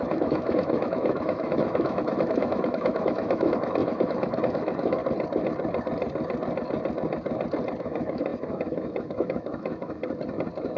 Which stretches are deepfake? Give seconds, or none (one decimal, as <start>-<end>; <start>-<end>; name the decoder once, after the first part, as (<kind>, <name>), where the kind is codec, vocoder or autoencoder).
0.0-5.0 (autoencoder, DAC-VAE); 7.8-10.0